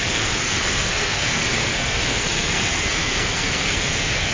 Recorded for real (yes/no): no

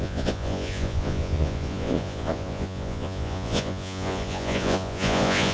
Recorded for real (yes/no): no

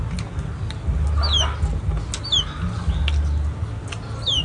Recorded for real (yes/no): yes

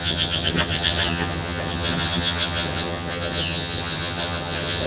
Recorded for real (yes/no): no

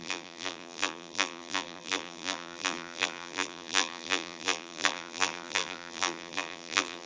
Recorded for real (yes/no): no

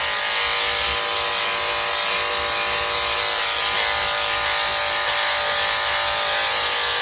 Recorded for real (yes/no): yes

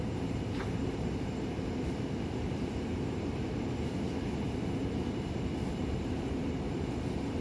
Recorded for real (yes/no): no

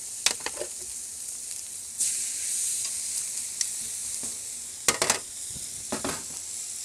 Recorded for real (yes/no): yes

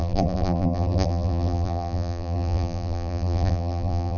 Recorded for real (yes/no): no